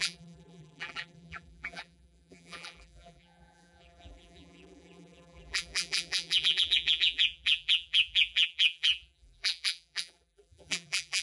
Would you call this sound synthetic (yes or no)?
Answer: yes